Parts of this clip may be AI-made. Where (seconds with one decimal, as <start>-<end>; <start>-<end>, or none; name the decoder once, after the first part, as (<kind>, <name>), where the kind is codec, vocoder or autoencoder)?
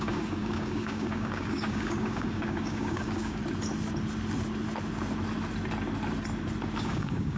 0.0-3.4 (codec, DAC); 6.8-7.4